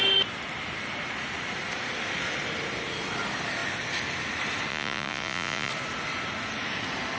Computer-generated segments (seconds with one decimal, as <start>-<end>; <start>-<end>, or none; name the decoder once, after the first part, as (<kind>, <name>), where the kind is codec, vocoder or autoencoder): 4.7-5.7 (vocoder, Vocos)